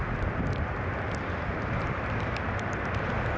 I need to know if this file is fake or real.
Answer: real